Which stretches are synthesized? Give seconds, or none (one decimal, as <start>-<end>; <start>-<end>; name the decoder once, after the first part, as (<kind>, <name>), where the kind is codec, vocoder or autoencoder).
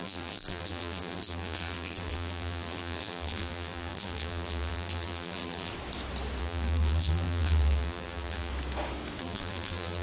0.0-5.7 (vocoder, BigVGAN v2); 6.4-8.5; 9.2-10.0